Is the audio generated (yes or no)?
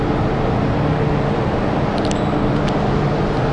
no